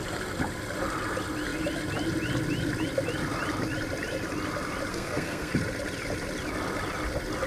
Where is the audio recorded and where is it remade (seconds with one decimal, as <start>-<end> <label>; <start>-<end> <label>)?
0.0-4.9 recorded; 4.9-5.5 remade; 5.5-7.5 recorded